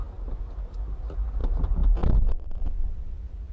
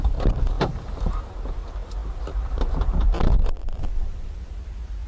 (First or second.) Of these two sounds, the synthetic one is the second